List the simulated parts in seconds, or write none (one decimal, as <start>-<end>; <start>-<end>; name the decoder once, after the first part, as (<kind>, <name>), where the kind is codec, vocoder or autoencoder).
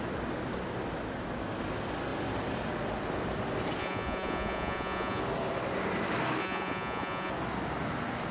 3.8-5.2 (vocoder, Vocos); 6.4-7.3